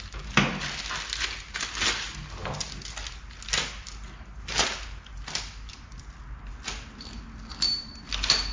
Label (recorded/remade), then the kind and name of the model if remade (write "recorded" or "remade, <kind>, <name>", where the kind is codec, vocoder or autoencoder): recorded